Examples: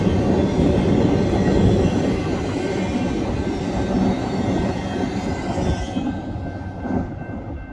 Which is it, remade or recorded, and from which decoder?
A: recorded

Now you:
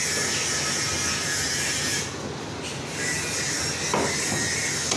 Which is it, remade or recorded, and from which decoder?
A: recorded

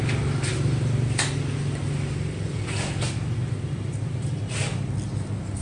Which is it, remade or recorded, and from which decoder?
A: recorded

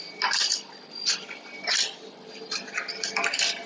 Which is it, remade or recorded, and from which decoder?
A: recorded